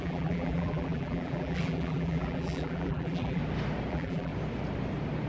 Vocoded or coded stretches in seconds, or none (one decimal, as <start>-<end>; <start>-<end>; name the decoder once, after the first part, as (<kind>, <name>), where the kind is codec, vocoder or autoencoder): 0.0-3.4 (vocoder, BigVGAN v2); 3.9-4.3